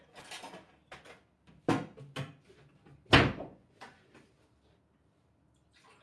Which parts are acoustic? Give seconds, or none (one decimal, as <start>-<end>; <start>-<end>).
0.0-3.4; 4.1-6.0